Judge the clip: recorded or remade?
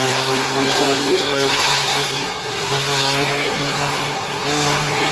remade